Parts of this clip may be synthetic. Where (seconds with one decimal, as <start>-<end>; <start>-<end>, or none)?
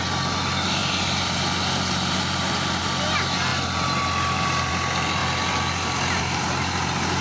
none